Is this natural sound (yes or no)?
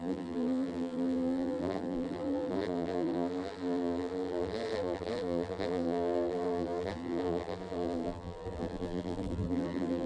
no